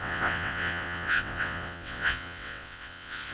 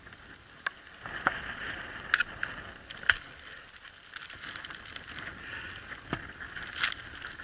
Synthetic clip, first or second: first